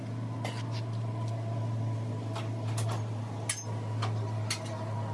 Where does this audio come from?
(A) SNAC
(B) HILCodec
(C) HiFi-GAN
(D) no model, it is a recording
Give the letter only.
D